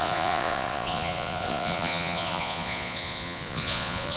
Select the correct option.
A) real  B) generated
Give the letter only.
B